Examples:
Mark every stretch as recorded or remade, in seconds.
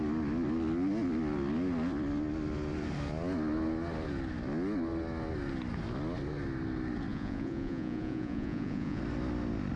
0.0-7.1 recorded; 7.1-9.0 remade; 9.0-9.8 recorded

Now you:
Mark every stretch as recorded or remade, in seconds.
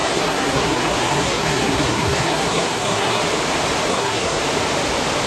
0.0-3.2 remade; 3.2-3.9 recorded; 3.9-4.4 remade; 4.4-5.3 recorded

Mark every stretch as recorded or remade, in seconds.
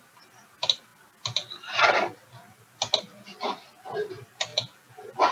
0.0-4.5 recorded; 4.5-5.3 remade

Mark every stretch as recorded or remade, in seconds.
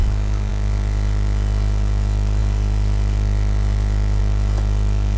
0.0-5.2 recorded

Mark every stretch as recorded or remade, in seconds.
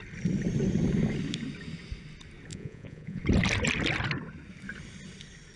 0.0-2.5 recorded; 2.5-3.2 remade; 3.2-5.6 recorded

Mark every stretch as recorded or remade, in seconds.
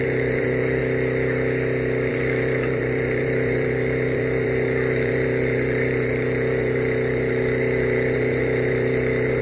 0.0-0.8 remade; 0.8-2.1 recorded; 2.1-9.4 remade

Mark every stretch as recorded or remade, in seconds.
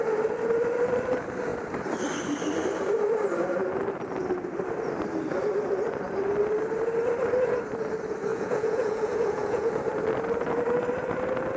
0.0-8.3 recorded; 8.3-9.7 remade; 9.7-11.6 recorded